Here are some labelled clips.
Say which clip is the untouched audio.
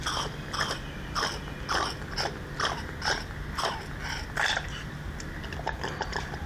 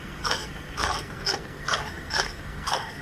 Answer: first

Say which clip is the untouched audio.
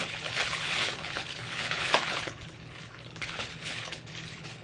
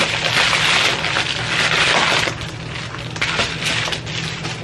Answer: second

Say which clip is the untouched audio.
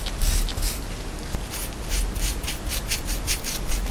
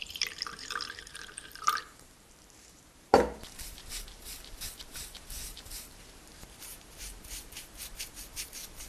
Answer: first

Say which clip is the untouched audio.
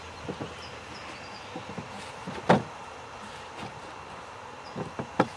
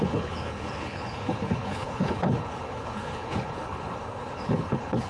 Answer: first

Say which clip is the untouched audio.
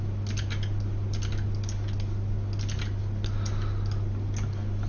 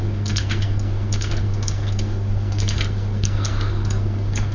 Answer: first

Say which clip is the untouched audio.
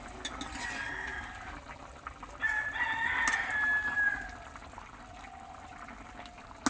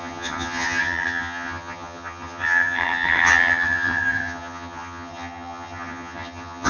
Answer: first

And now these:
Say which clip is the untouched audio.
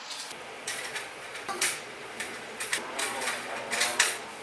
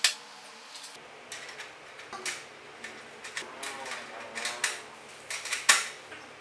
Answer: second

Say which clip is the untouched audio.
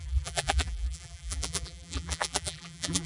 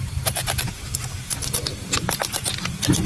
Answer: second